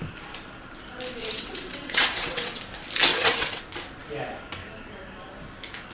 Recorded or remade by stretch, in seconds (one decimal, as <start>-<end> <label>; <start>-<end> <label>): 0.0-1.2 recorded; 1.2-2.6 remade; 2.6-3.1 recorded; 3.1-3.6 remade; 3.6-5.9 recorded